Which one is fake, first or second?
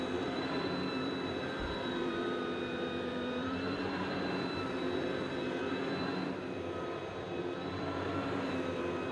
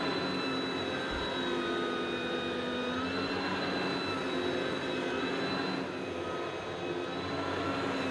first